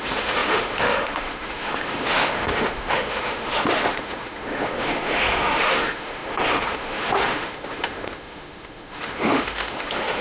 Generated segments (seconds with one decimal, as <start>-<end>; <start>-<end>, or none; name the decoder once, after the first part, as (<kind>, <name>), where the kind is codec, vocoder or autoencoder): 0.0-10.2 (autoencoder, DAC-VAE)

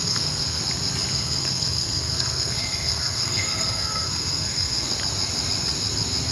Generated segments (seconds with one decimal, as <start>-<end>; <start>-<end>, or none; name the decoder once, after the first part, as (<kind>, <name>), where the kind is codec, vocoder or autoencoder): 0.0-0.6 (codec, SNAC); 1.1-4.9